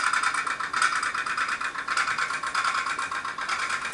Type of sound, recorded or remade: recorded